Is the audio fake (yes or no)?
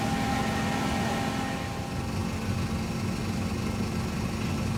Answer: no